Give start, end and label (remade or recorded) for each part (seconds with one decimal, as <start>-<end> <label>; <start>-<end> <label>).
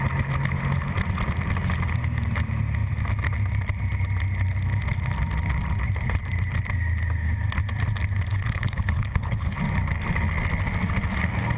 0.0-8.3 recorded; 8.3-9.6 remade; 9.6-11.6 recorded